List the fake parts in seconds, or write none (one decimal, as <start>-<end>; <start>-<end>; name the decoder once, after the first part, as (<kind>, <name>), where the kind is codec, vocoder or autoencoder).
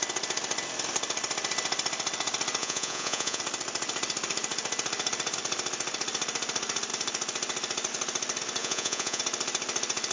2.6-3.4 (vocoder, Vocos); 8.6-9.2